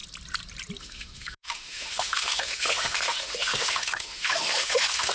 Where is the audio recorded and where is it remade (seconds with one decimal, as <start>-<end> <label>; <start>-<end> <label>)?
0.0-0.8 recorded; 0.8-5.1 remade